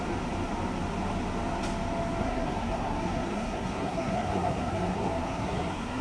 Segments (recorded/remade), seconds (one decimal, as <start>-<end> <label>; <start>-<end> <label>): 0.0-2.2 recorded; 2.2-6.0 remade

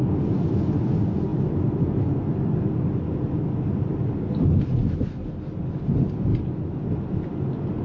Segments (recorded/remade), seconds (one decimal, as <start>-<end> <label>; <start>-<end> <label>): 0.0-7.8 recorded

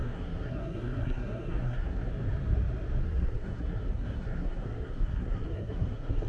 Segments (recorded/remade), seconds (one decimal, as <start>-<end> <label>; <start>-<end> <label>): 0.0-2.1 remade; 2.1-3.0 recorded; 3.0-6.3 remade

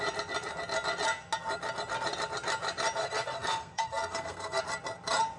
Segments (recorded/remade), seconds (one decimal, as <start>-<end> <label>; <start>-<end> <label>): 0.0-3.0 recorded; 3.0-4.6 remade; 4.6-5.4 recorded

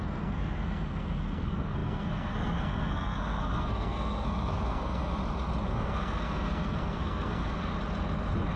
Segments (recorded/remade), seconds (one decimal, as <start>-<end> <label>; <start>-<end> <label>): 0.0-5.2 remade; 5.2-5.7 recorded; 5.7-7.7 remade; 7.7-8.6 recorded

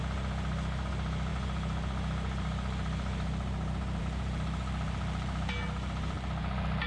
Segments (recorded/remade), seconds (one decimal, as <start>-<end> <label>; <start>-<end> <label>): 0.0-6.9 recorded

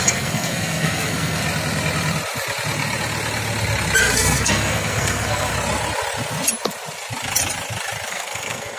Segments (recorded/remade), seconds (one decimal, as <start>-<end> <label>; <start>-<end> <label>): 0.0-1.4 remade; 1.4-4.0 recorded; 4.0-5.5 remade; 5.5-8.1 recorded; 8.1-8.8 remade